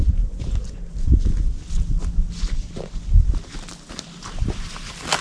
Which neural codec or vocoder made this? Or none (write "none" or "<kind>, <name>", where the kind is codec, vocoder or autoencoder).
none